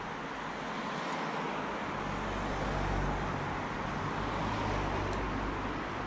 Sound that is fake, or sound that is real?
real